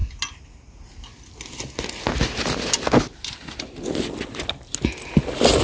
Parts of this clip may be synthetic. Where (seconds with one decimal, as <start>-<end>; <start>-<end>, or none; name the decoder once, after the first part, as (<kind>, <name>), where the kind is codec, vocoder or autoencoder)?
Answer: none